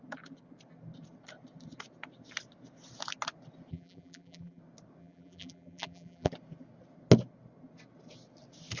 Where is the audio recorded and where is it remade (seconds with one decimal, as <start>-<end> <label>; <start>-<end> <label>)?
0.0-3.7 recorded; 3.7-4.6 remade; 4.6-5.0 recorded; 5.0-6.3 remade; 6.3-8.8 recorded